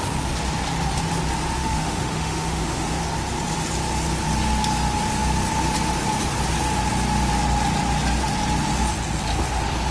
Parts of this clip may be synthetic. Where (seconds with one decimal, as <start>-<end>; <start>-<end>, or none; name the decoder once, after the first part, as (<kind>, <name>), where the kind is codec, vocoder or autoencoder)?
1.6-3.0 (autoencoder, DAC-VAE)